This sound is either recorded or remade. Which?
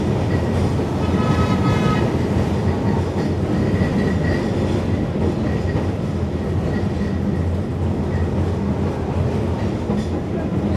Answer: recorded